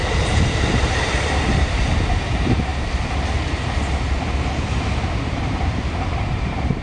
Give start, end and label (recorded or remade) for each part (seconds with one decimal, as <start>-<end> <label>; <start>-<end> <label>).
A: 0.0-2.7 remade; 2.7-5.3 recorded; 5.3-6.8 remade